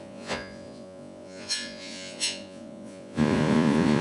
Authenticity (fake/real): fake